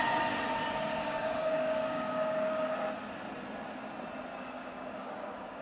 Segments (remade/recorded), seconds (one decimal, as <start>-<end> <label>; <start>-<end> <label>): 0.0-0.9 recorded; 0.9-2.7 remade; 2.7-4.3 recorded; 4.3-5.6 remade